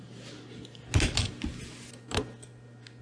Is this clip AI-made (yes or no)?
no